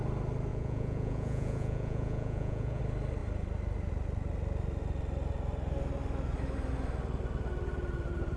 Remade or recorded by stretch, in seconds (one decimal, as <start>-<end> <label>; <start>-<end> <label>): 0.0-0.5 recorded; 0.5-2.8 remade; 2.8-8.4 recorded